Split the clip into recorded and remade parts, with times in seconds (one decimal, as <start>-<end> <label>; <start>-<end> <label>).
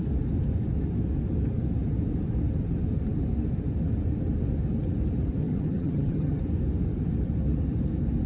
0.0-5.4 recorded; 5.4-6.4 remade; 6.4-8.3 recorded